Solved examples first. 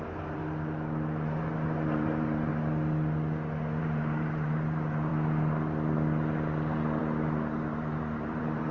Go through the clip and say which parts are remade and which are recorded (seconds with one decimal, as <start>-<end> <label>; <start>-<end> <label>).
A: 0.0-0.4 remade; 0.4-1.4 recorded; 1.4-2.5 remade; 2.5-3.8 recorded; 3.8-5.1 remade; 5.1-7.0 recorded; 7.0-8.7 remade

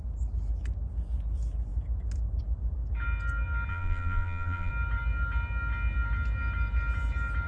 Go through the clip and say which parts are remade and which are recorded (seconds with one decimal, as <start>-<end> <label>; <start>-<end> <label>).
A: 0.0-3.7 recorded; 3.7-4.7 remade; 4.7-7.5 recorded

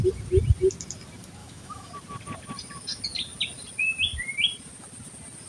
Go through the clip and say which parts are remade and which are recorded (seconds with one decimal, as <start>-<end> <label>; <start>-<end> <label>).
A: 0.0-1.4 recorded; 1.4-1.9 remade; 1.9-5.5 recorded